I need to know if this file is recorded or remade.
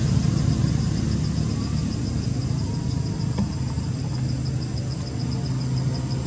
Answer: recorded